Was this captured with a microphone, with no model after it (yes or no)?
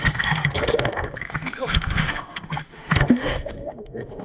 no